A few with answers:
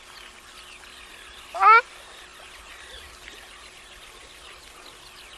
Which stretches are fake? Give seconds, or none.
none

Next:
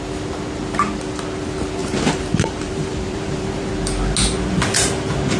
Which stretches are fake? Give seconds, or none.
1.8-3.7 (vocoder, BigVGAN v2)

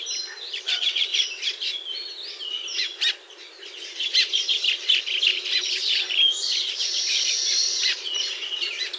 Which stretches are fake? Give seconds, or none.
0.0-1.1 (vocoder, BigVGAN v2); 4.8-9.0

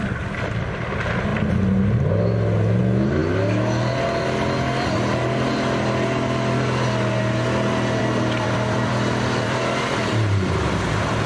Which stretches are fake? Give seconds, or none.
0.0-1.3 (vocoder, BigVGAN v2); 2.8-3.2; 8.0-11.3

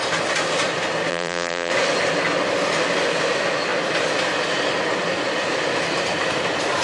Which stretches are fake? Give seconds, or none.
1.1-1.7 (vocoder, BigVGAN v2)